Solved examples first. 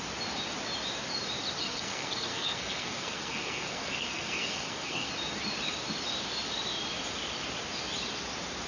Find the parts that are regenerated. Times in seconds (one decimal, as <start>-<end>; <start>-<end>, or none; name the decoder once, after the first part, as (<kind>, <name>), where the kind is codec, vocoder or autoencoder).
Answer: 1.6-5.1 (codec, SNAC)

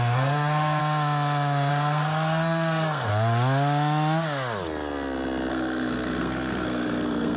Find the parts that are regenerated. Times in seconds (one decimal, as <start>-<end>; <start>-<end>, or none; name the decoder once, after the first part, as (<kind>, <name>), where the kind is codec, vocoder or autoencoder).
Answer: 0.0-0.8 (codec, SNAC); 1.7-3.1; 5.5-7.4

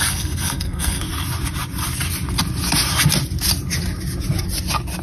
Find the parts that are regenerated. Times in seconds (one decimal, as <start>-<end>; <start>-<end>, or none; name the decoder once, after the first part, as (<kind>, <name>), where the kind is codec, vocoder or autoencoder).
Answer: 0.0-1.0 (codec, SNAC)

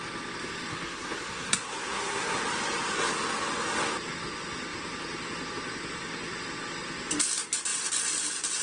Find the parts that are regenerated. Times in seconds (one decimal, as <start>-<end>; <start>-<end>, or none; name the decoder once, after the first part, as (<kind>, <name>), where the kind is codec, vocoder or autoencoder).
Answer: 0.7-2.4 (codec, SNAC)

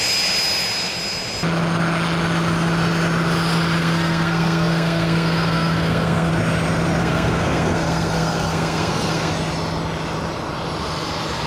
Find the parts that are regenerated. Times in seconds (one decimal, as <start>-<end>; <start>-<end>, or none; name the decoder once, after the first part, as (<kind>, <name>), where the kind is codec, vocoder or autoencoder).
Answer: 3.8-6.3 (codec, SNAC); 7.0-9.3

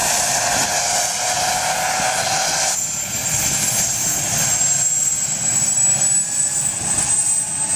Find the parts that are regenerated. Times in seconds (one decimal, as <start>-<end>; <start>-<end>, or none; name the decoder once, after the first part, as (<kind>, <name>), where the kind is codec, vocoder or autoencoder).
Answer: none